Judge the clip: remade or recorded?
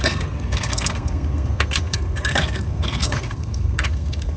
remade